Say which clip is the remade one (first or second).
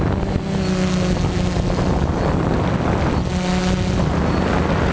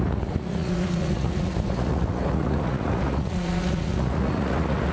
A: second